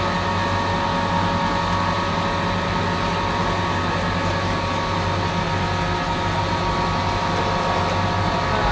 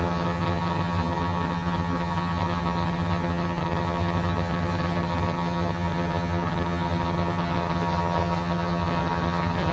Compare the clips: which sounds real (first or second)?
first